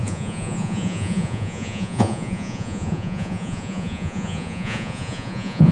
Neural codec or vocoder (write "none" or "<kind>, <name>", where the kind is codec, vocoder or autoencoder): vocoder, Vocos